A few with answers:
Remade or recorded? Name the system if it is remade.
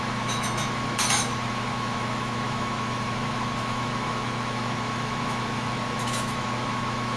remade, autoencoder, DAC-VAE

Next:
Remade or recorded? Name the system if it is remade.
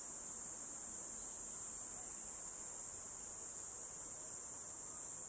recorded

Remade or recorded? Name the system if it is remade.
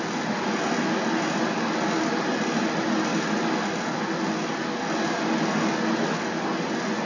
recorded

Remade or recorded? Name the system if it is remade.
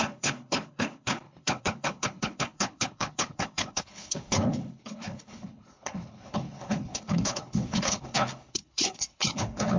remade, codec, HILCodec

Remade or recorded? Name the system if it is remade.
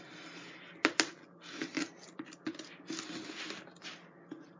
recorded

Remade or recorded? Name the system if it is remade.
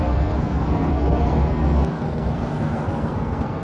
remade, codec, SNAC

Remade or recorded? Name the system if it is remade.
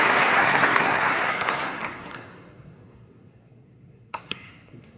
remade, codec, SNAC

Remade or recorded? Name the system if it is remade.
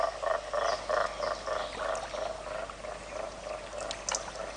recorded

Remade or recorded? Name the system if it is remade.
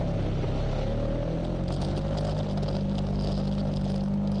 recorded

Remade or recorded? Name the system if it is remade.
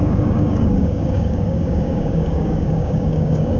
remade, codec, DAC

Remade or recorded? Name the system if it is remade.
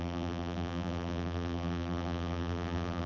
remade, vocoder, BigVGAN v2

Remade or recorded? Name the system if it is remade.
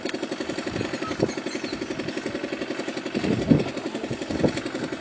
recorded